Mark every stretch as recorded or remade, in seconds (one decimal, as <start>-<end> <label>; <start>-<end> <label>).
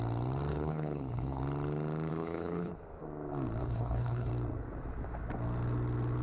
0.0-0.5 recorded; 0.5-1.4 remade; 1.4-2.1 recorded; 2.1-2.7 remade; 2.7-3.6 recorded; 3.6-4.3 remade; 4.3-6.2 recorded